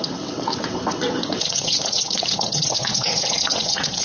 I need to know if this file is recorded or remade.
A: remade